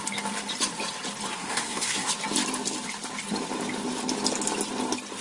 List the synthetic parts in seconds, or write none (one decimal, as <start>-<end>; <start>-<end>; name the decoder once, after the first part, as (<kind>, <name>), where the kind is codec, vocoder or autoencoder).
1.3-2.1 (codec, SNAC)